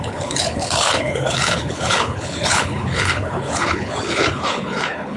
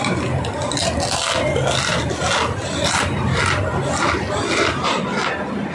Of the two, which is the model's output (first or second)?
first